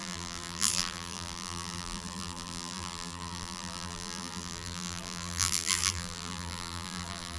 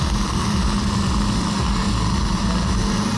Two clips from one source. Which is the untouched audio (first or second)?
second